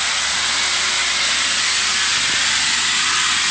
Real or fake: real